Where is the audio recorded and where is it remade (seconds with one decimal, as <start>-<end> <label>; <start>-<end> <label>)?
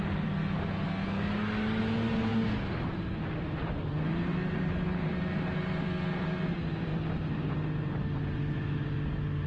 0.0-1.0 recorded; 1.0-1.8 remade; 1.8-9.5 recorded